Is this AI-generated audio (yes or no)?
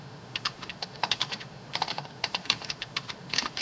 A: yes